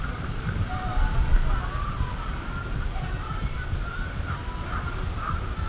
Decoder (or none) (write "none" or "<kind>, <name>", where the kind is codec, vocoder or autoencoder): none